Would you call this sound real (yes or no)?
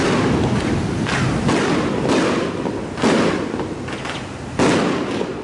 yes